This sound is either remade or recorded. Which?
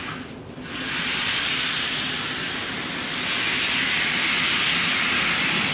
recorded